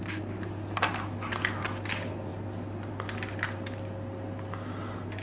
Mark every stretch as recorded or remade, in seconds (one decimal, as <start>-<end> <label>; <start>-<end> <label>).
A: 0.0-5.2 recorded